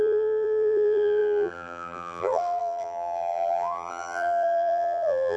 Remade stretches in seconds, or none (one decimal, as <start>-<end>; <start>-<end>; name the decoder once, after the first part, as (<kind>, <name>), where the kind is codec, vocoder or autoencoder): 0.0-5.4 (vocoder, BigVGAN v2)